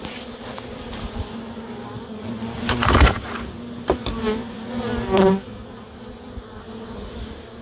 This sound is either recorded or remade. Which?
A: recorded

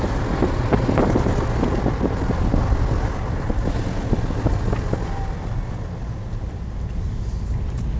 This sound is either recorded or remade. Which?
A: recorded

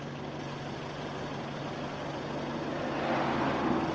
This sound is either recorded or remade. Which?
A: recorded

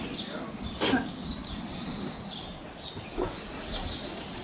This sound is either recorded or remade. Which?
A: recorded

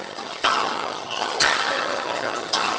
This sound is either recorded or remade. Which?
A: remade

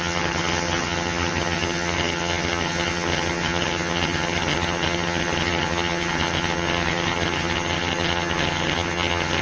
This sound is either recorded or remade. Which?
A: remade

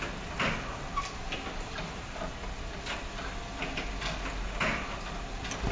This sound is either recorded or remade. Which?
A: recorded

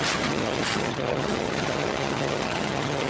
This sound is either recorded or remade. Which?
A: remade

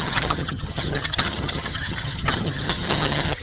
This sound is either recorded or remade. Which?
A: remade